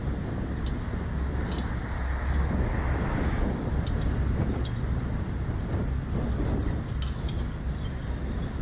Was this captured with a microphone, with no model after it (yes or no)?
yes